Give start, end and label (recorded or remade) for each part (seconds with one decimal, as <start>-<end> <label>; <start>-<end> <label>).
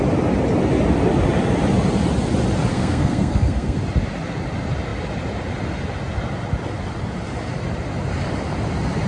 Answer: 0.0-2.7 recorded; 2.7-3.8 remade; 3.8-9.1 recorded